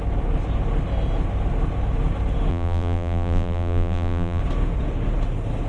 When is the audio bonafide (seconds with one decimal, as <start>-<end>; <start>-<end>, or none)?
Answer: 0.0-2.5; 4.4-5.7